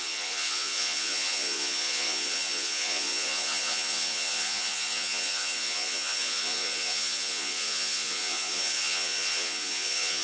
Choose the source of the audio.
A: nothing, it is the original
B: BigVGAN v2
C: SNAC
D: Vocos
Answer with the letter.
D